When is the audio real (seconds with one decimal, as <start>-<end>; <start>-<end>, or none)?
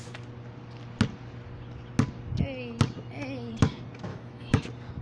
0.0-4.1; 4.6-5.0